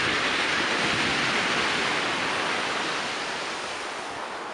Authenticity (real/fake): real